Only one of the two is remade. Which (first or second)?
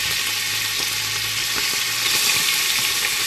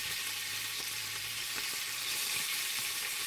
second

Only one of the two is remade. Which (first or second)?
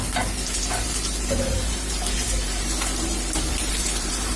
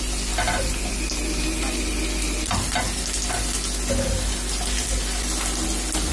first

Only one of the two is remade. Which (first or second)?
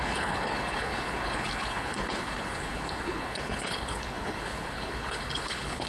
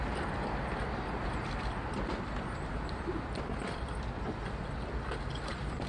first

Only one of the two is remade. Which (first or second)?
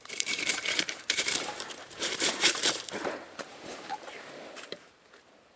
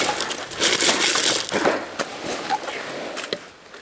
first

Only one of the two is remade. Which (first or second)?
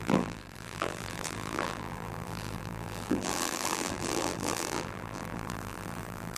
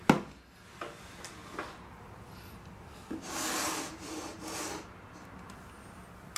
first